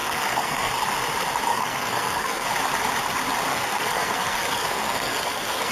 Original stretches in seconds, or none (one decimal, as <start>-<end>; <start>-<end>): 0.7-1.5; 2.5-3.5